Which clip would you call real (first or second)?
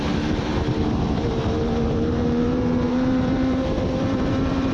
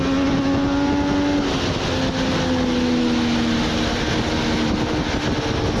second